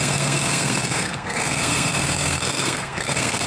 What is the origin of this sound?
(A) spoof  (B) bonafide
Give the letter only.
A